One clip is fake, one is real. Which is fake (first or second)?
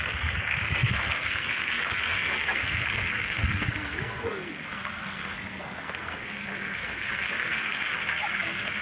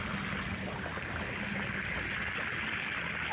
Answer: first